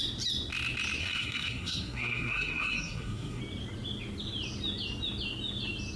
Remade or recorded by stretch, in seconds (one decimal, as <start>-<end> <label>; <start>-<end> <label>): 0.0-1.0 recorded; 1.0-3.4 remade; 3.4-6.0 recorded